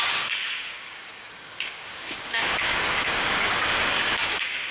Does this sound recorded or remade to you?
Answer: remade